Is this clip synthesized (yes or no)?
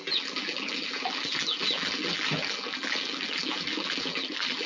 yes